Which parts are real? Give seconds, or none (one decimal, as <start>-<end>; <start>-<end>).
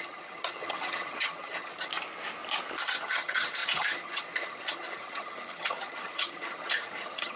1.9-2.8